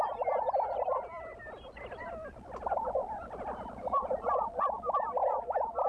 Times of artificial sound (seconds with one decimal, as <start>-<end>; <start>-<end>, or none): 1.3-4.1